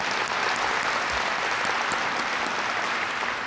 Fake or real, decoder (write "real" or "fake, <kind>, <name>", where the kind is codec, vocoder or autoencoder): real